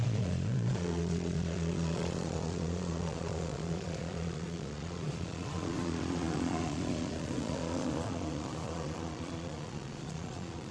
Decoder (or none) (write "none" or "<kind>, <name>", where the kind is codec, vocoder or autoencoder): vocoder, Vocos